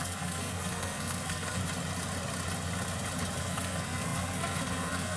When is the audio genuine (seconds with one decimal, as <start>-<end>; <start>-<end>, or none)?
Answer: 1.6-3.4